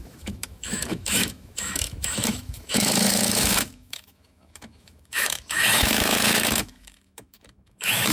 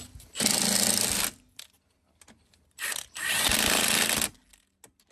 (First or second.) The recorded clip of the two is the second